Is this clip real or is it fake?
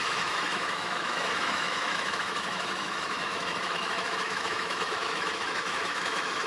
fake